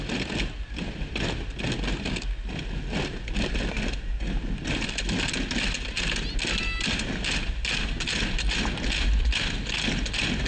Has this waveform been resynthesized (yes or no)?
no